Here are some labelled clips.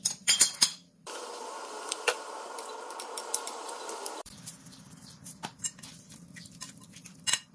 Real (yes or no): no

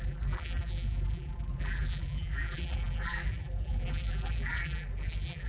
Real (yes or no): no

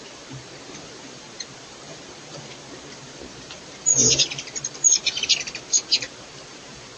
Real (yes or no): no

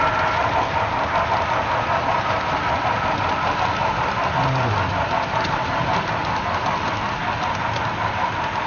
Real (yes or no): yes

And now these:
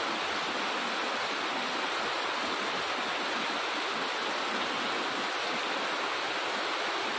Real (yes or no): yes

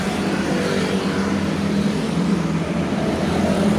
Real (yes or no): yes